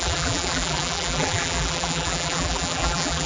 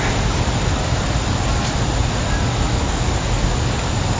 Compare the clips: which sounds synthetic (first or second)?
first